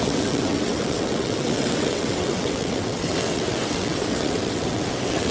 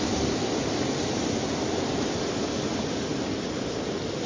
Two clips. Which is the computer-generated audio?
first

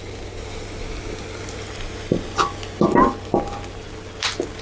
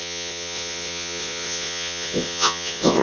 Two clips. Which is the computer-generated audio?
second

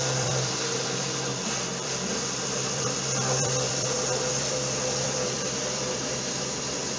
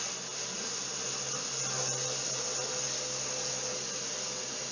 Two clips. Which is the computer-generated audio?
first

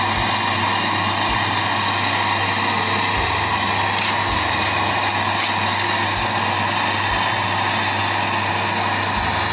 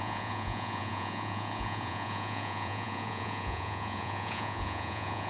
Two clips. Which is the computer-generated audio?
second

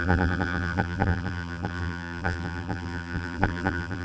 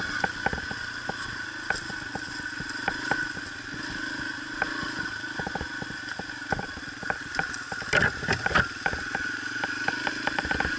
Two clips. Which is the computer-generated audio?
first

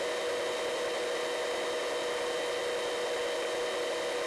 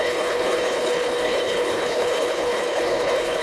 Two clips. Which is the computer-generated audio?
second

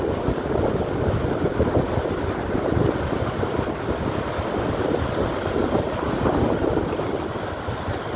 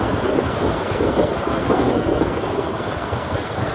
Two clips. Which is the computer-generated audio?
second